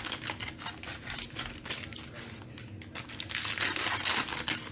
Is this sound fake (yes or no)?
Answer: no